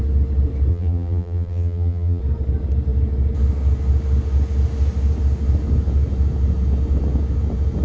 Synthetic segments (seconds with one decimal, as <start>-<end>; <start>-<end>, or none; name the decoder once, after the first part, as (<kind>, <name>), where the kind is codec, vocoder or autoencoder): 0.7-2.2 (vocoder, BigVGAN v2)